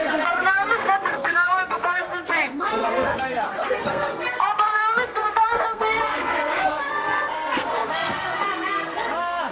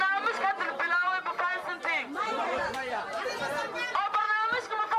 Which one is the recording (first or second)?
second